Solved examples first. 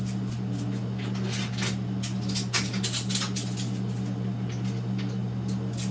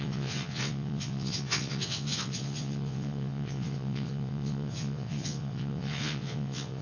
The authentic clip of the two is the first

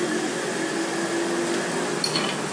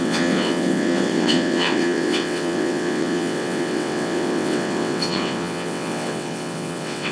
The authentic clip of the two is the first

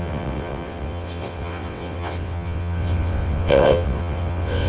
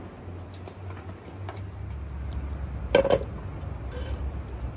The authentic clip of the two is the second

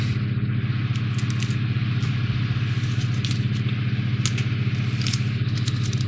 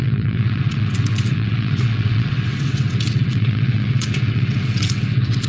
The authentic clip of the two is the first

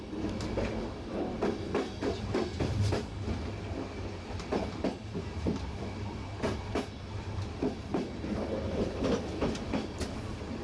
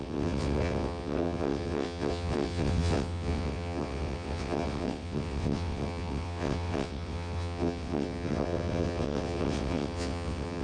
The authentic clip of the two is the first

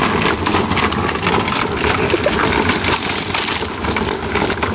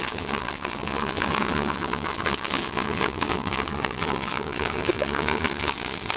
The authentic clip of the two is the first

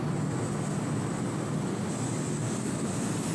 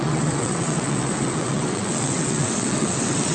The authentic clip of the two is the first